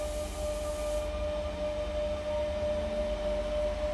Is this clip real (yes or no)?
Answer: yes